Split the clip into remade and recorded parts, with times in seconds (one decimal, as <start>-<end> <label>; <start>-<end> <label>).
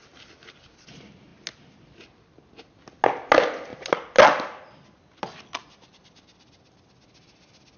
0.0-7.8 recorded